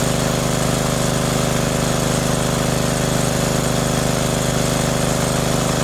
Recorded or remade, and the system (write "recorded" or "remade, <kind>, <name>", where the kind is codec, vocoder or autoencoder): recorded